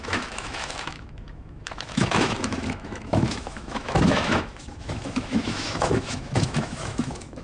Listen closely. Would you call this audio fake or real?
fake